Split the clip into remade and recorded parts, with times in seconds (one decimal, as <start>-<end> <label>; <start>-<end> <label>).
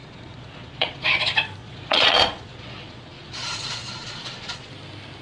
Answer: 0.0-1.2 remade; 1.2-1.6 recorded; 1.6-4.7 remade; 4.7-5.2 recorded